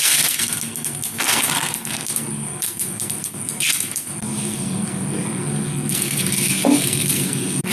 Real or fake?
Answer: fake